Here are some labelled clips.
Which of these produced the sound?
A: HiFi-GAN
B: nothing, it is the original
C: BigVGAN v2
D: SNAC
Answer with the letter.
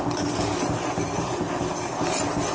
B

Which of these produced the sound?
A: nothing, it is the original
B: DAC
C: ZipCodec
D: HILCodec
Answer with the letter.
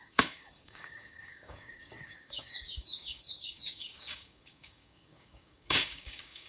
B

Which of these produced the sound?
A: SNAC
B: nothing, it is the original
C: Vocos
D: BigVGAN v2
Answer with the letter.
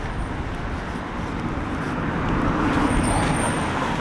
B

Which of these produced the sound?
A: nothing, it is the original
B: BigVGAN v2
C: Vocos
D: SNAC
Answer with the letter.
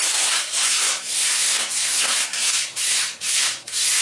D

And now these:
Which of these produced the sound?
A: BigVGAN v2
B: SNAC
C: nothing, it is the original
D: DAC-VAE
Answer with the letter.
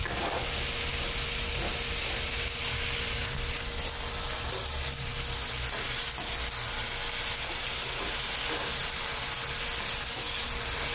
C